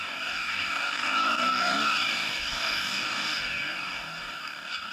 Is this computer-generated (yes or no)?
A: yes